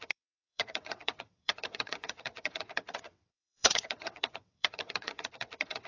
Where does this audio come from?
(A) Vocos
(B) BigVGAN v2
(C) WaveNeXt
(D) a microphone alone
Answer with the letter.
C